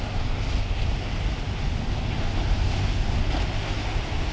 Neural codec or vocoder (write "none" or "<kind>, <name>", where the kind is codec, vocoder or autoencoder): none